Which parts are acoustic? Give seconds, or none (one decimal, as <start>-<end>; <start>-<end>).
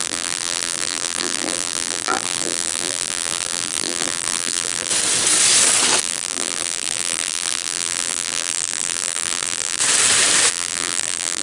4.9-6.0; 9.8-10.5